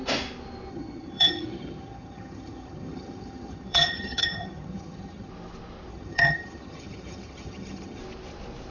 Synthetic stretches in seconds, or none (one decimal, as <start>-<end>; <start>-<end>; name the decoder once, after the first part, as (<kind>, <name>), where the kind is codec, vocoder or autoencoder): 0.7-5.3 (vocoder, HiFi-GAN); 5.9-8.0

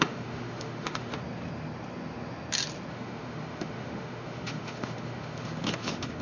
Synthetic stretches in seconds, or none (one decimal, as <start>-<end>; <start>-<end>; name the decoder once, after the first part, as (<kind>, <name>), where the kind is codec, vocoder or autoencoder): 0.0-1.2 (autoencoder, DAC-VAE); 2.9-6.2